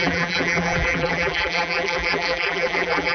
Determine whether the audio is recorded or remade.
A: remade